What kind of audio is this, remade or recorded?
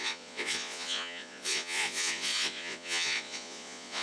remade